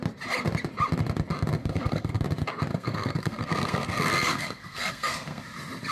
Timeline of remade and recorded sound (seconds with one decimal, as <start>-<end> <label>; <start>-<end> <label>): 0.0-1.6 recorded; 1.6-2.2 remade; 2.2-2.7 recorded; 2.7-5.4 remade; 5.4-5.9 recorded